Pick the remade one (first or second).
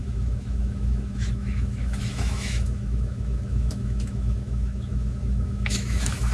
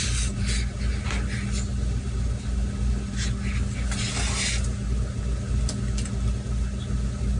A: first